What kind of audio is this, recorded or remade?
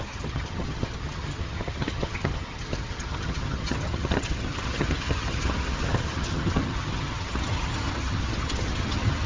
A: remade